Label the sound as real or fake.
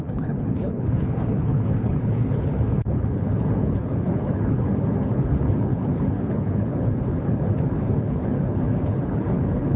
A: fake